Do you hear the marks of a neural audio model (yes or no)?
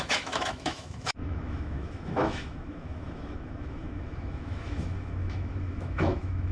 yes